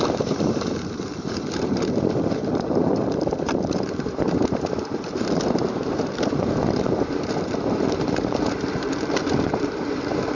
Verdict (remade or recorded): remade